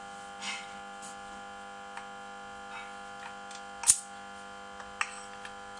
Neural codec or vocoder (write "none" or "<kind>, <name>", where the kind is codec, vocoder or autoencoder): none